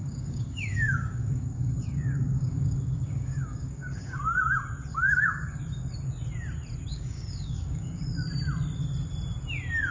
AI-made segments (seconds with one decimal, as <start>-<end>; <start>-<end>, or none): 0.0-4.2; 4.9-5.6; 6.9-8.0